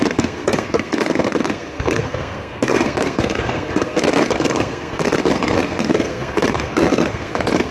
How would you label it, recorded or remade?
remade